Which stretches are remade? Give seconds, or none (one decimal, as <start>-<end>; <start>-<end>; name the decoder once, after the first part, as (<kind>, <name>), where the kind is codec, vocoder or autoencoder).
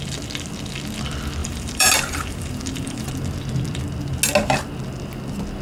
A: 1.4-3.1 (vocoder, BigVGAN v2)